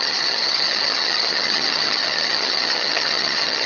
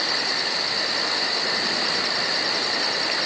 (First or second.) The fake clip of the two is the first